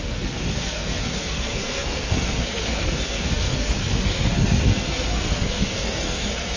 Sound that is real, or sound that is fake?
fake